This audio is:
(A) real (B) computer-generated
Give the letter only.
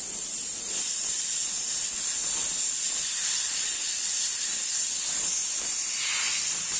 A